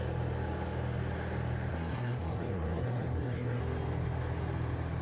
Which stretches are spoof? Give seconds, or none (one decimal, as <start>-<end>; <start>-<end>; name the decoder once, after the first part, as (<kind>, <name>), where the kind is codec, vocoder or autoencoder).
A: 1.7-3.6 (codec, SNAC)